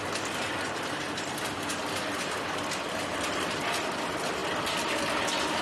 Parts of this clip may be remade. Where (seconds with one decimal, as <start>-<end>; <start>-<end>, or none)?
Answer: none